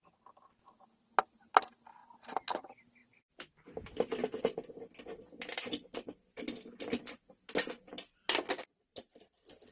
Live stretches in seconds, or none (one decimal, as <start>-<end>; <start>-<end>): 0.0-9.7